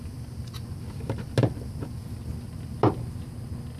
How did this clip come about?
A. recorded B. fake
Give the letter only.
A